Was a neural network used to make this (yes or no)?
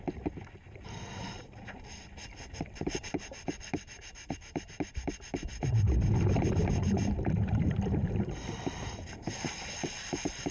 no